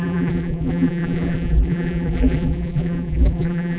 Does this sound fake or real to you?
fake